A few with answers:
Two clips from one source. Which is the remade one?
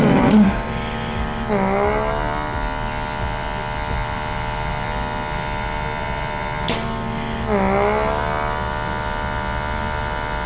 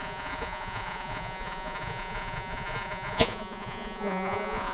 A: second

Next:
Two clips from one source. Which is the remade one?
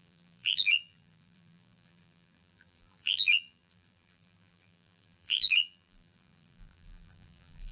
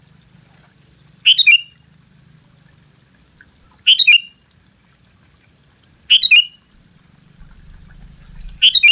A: first